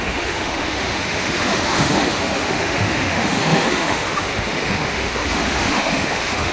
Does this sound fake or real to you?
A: fake